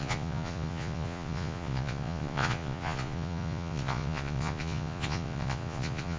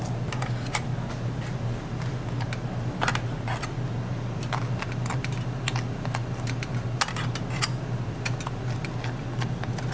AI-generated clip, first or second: first